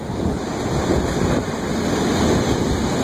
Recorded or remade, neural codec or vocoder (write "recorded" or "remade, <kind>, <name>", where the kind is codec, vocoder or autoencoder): recorded